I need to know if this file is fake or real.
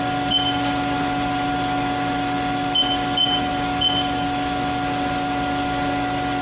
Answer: real